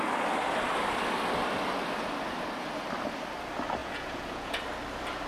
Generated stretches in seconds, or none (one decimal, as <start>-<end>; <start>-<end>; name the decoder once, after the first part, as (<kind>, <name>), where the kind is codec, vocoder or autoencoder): 3.8-4.6 (vocoder, Vocos)